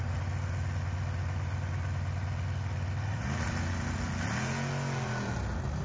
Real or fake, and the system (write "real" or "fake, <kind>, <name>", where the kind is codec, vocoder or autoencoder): real